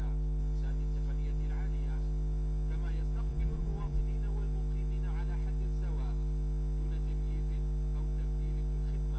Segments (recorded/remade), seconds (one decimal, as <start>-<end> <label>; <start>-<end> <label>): 0.0-3.3 recorded; 3.3-4.0 remade; 4.0-9.2 recorded

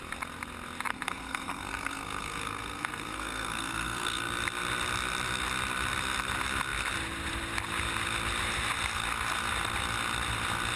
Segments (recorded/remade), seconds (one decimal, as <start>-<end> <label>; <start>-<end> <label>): 0.0-0.9 recorded; 0.9-4.2 remade; 4.2-10.8 recorded

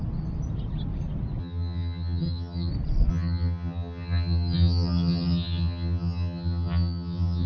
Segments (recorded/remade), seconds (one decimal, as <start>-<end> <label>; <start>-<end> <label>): 0.0-1.4 recorded; 1.4-2.7 remade; 2.7-3.1 recorded; 3.1-7.5 remade